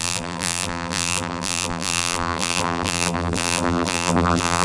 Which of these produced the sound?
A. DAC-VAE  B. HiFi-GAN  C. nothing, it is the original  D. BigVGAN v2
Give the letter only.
D